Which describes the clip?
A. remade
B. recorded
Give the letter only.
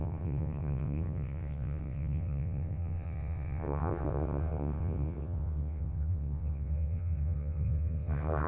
A